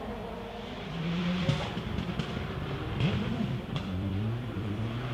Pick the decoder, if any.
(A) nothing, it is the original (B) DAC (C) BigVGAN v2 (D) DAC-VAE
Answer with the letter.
C